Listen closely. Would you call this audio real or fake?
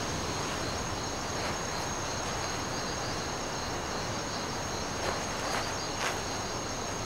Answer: fake